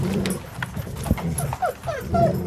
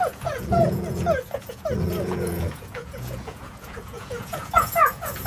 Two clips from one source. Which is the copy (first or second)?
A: second